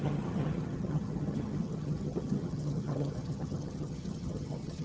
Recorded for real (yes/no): no